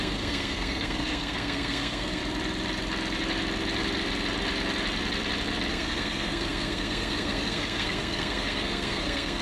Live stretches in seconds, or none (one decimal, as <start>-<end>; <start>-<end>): 2.2-5.7